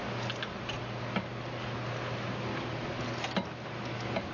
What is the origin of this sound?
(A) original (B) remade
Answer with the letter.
A